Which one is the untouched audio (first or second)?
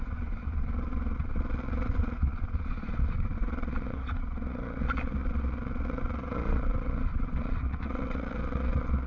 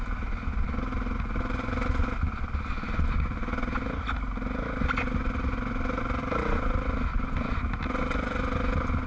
second